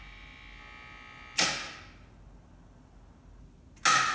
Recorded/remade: recorded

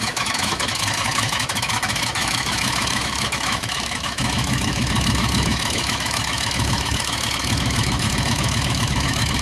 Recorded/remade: remade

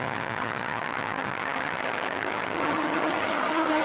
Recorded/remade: remade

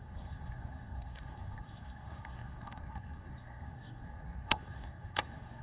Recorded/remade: remade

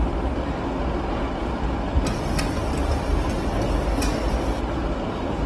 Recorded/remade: recorded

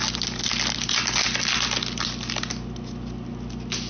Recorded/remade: recorded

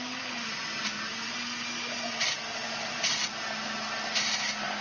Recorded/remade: recorded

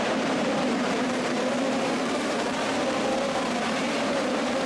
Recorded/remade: remade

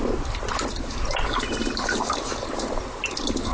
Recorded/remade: recorded